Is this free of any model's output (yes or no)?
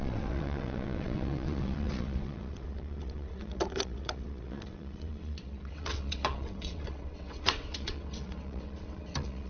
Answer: no